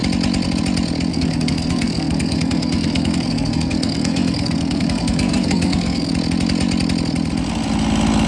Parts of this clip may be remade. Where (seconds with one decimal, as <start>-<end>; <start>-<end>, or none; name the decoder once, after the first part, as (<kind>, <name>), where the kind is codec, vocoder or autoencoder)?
1.1-6.1 (codec, SNAC)